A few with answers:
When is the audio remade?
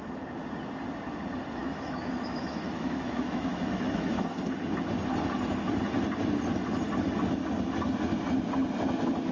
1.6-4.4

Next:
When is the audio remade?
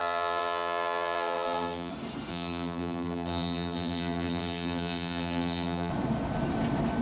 0.0-1.9; 2.3-5.9